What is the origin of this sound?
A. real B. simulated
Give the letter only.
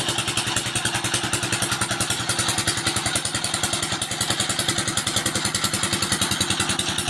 A